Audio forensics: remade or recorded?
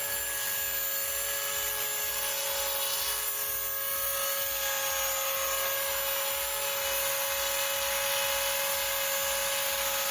recorded